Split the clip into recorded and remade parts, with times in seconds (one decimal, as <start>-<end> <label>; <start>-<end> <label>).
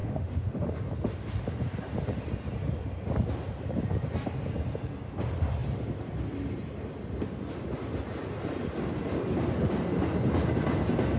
0.0-0.7 remade; 0.7-11.2 recorded